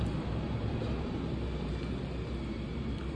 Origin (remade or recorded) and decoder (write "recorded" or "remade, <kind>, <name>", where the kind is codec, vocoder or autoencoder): recorded